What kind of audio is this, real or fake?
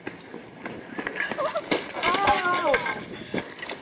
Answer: real